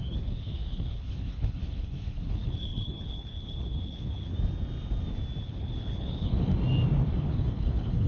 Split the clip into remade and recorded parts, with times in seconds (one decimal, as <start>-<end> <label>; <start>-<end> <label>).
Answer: 0.0-4.3 remade; 4.3-5.4 recorded; 5.4-6.5 remade; 6.5-7.2 recorded; 7.2-8.1 remade